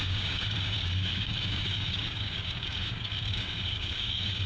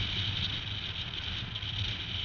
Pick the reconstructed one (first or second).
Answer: first